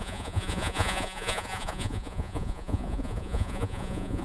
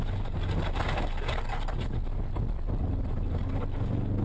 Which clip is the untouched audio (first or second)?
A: second